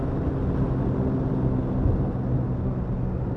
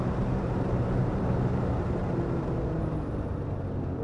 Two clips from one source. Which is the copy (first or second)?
second